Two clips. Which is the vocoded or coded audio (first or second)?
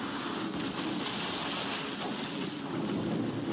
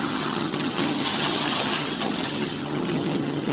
second